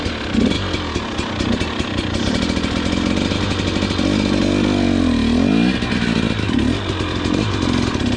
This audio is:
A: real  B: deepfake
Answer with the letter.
A